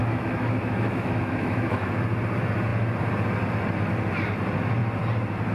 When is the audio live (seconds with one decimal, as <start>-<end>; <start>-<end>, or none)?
1.9-5.5